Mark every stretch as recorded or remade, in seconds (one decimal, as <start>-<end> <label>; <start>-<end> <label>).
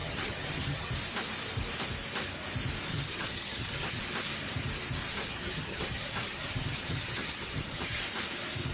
0.0-0.9 remade; 0.9-2.9 recorded; 2.9-4.0 remade; 4.0-5.1 recorded; 5.1-8.0 remade; 8.0-8.7 recorded